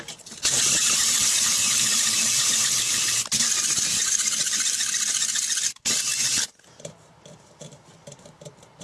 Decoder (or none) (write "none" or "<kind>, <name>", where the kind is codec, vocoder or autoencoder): vocoder, BigVGAN v2